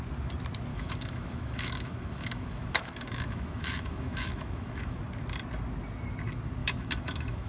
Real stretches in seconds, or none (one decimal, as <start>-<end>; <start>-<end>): 0.0-0.7; 5.0-6.6